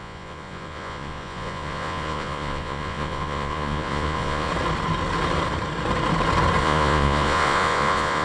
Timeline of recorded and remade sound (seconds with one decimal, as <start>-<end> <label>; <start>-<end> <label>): 0.0-4.5 remade; 4.5-6.6 recorded; 6.6-8.2 remade